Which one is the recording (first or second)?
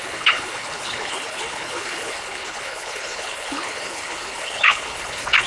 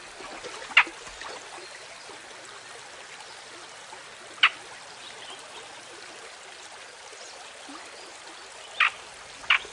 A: second